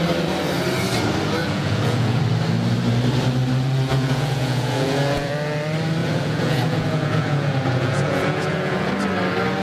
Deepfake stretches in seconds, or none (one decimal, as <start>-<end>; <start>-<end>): 1.4-2.2; 3.9-5.3; 6.0-8.9